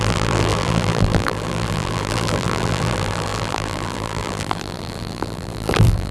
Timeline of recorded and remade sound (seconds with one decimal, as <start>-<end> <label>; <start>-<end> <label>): 0.0-6.1 remade